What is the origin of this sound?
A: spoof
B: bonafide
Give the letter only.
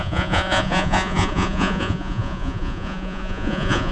A